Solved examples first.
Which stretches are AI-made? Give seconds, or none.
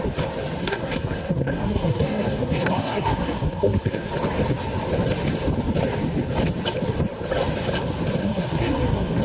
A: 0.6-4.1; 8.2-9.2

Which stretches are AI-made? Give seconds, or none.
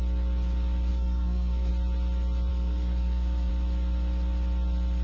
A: 0.9-1.7; 2.5-3.5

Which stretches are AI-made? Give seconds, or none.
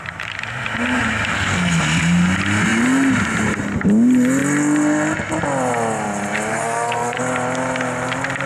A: 1.3-1.8; 6.5-7.2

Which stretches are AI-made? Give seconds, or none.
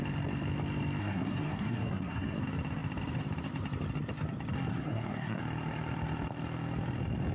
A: 1.0-2.4; 4.7-5.4